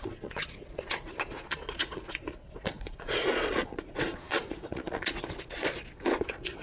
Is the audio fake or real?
fake